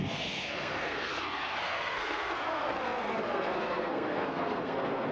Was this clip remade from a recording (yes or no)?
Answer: yes